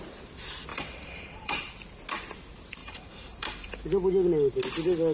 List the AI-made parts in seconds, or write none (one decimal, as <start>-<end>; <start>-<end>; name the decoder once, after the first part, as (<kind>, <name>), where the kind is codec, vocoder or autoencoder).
0.7-1.7 (vocoder, BigVGAN v2); 2.8-3.7